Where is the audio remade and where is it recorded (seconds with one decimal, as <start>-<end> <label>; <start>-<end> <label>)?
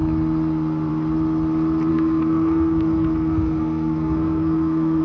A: 0.0-1.9 recorded; 1.9-5.0 remade